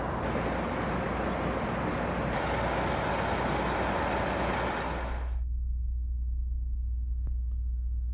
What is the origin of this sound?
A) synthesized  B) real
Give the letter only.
B